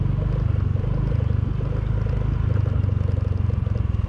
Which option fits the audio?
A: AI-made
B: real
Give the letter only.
B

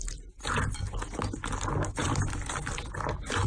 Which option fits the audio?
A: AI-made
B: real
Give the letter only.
B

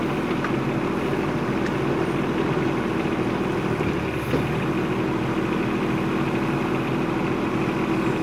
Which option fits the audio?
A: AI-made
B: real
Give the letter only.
B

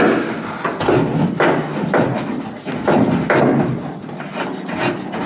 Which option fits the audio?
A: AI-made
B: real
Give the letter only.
B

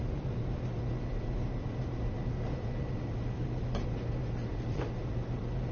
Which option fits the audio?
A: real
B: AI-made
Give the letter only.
A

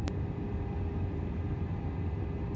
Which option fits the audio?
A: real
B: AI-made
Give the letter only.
A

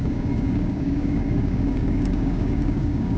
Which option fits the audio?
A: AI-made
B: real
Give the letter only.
A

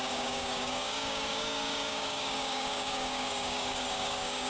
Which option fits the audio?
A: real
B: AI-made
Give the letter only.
B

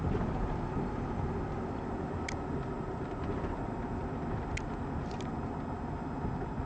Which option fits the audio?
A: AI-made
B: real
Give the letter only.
B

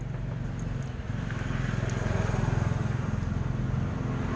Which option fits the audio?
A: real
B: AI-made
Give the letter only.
A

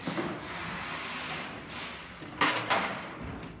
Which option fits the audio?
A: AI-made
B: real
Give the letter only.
B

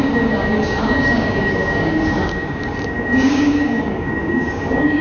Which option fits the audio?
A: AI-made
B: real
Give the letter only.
A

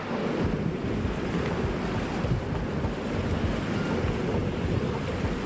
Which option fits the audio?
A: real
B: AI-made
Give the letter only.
A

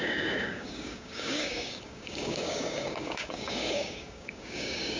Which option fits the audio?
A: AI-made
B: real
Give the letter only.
A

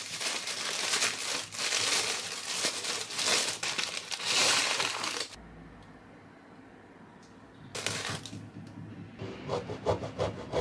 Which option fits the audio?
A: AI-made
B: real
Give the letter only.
B